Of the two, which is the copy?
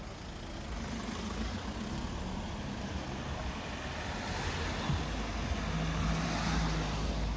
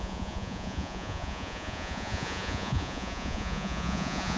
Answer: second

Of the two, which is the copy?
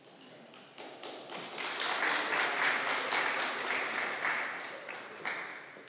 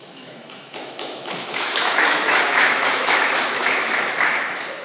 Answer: second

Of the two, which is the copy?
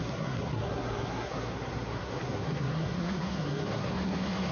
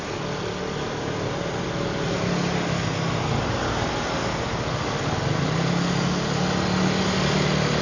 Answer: first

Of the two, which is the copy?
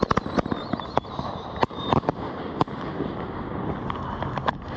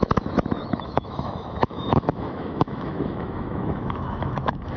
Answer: second